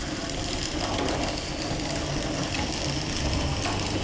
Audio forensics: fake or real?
real